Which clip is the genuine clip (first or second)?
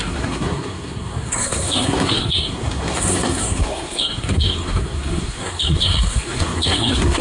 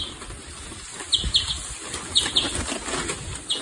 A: second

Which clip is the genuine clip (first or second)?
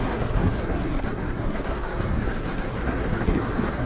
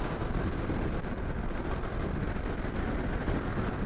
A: second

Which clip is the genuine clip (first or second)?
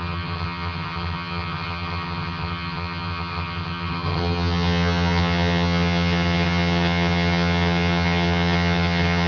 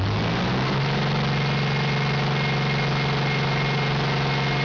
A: second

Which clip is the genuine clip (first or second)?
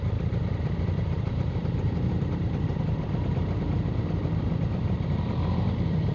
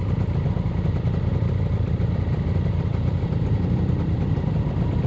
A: second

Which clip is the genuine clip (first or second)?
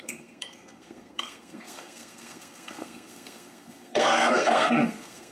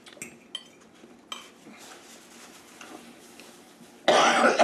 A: second